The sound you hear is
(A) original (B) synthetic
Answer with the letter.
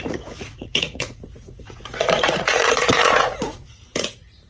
B